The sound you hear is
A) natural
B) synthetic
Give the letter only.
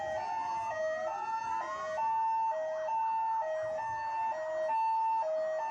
A